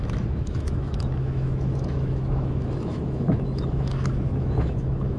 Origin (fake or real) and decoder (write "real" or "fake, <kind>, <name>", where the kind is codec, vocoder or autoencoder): fake, autoencoder, DAC-VAE